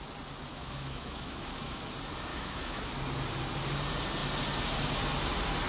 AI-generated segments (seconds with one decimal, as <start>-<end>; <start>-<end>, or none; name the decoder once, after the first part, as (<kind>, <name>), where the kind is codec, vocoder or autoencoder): 0.5-1.8 (autoencoder, DAC-VAE); 2.3-2.9